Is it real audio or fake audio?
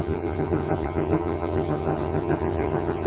fake